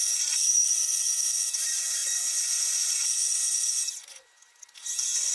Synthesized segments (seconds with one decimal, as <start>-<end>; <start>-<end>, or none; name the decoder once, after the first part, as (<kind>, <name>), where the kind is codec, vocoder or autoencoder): 2.0-5.3 (vocoder, Vocos)